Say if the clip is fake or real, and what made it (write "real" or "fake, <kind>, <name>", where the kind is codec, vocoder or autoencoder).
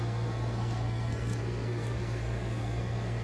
fake, codec, SNAC